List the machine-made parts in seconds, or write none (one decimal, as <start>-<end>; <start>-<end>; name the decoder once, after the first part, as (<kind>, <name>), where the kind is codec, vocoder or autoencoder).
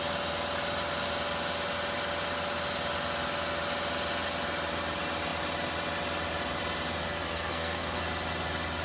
7.0-8.0 (codec, SNAC)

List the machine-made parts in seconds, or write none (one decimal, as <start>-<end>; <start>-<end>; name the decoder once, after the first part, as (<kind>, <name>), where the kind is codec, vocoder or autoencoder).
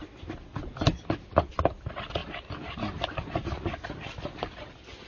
none